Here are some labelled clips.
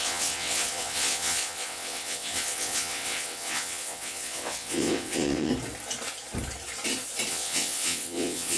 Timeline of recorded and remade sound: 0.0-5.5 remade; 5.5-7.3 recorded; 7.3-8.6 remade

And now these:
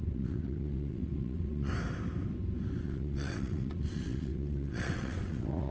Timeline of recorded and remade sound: 0.0-1.7 remade; 1.7-2.8 recorded; 2.8-5.7 remade

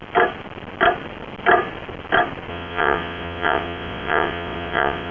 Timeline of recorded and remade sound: 0.0-2.5 recorded; 2.5-5.1 remade

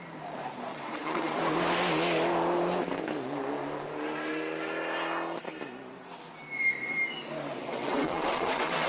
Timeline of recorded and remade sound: 0.0-0.7 recorded; 0.7-1.4 remade; 1.4-7.6 recorded; 7.6-8.9 remade

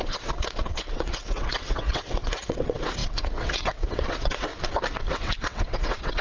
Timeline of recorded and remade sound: 0.0-4.5 remade; 4.5-5.1 recorded; 5.1-6.2 remade